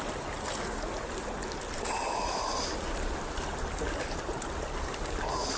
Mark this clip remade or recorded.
recorded